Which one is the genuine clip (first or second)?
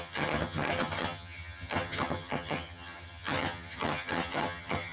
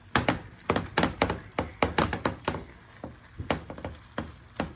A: second